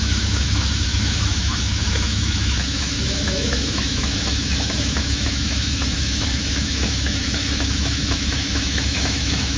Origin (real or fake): fake